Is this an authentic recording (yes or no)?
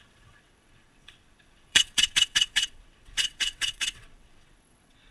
no